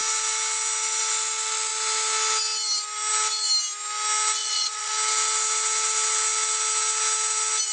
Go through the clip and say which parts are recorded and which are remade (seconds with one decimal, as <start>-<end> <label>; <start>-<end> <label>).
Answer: 0.0-4.4 recorded; 4.4-4.9 remade; 4.9-7.7 recorded